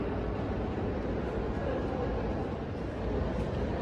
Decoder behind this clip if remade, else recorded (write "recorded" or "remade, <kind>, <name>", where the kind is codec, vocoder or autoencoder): recorded